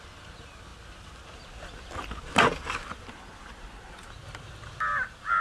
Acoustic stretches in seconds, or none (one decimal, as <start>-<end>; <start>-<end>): 0.0-5.4